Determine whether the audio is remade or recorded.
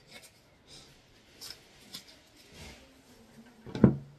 recorded